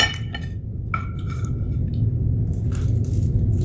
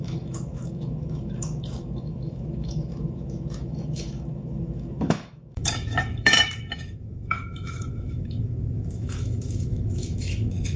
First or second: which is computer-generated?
second